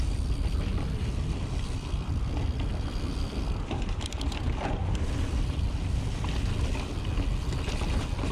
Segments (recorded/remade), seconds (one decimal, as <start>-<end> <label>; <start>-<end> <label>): 0.0-0.7 recorded; 0.7-2.1 remade; 2.1-2.7 recorded; 2.7-6.5 remade; 6.5-8.3 recorded